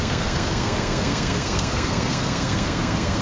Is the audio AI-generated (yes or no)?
yes